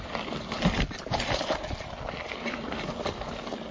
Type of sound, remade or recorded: recorded